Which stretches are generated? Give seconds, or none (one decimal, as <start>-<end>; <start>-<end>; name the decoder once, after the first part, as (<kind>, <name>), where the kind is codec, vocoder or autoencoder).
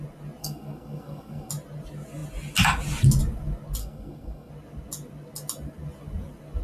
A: 0.4-1.5 (codec, SNAC); 3.8-4.5